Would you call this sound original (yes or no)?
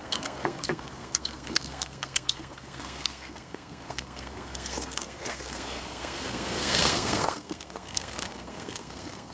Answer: no